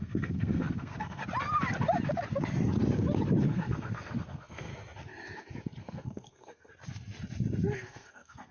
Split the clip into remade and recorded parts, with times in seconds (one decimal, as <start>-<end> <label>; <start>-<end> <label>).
0.0-1.2 remade; 1.2-3.4 recorded; 3.4-4.7 remade; 4.7-5.8 recorded; 5.8-6.7 remade; 6.7-7.7 recorded; 7.7-8.5 remade